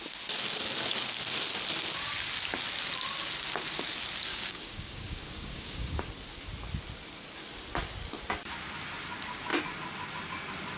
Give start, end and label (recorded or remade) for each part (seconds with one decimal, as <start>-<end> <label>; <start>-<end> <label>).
0.0-4.3 recorded; 4.3-6.0 remade; 6.0-10.8 recorded